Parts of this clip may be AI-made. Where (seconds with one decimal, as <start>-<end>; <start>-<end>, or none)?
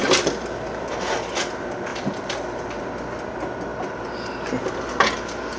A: 1.9-2.8; 3.7-5.6